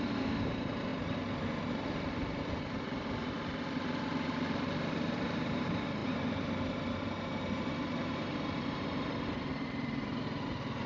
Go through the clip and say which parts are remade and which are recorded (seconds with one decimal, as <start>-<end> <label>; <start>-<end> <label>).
0.0-0.9 remade; 0.9-2.4 recorded; 2.4-10.9 remade